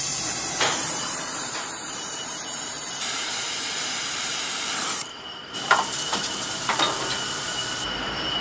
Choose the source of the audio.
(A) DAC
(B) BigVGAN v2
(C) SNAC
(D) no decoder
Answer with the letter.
B